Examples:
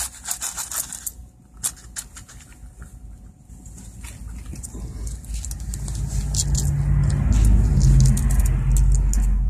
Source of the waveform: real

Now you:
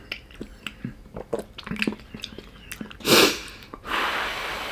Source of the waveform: real